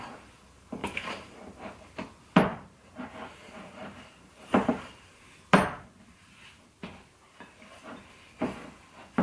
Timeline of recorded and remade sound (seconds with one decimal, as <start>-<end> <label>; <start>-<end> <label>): 0.0-2.5 recorded; 2.5-5.2 remade; 5.2-9.2 recorded